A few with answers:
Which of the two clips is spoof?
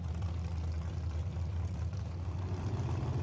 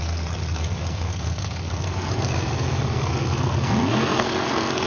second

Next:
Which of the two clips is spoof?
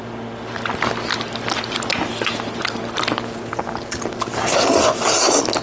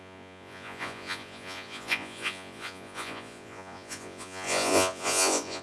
second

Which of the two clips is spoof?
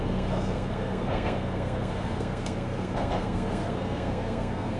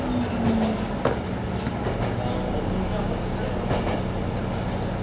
first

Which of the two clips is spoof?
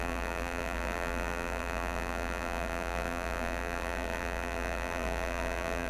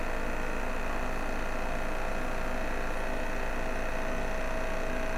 first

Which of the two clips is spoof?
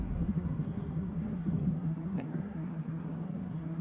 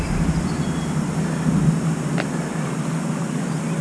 first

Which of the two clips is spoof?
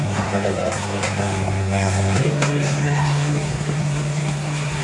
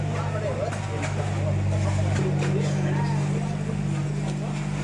first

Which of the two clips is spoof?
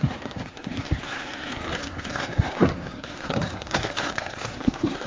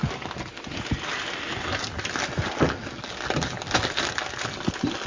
first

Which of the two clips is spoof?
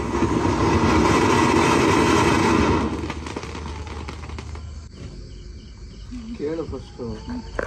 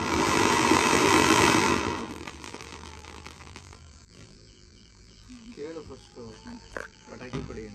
second